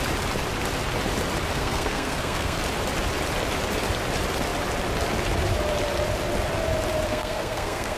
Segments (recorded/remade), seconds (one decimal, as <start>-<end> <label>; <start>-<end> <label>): 0.0-1.5 recorded; 1.5-2.6 remade; 2.6-7.1 recorded; 7.1-8.0 remade